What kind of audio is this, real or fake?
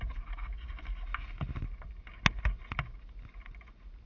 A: real